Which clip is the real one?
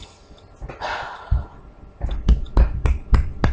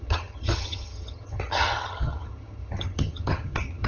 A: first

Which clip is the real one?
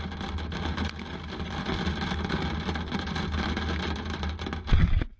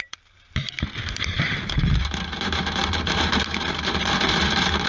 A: first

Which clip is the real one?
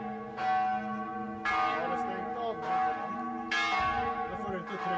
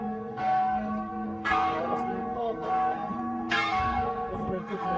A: first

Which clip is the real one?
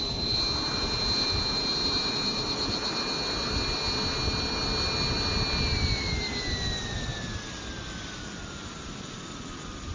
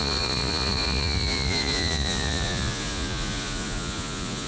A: first